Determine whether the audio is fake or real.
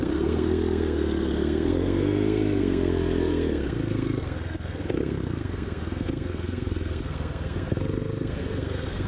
fake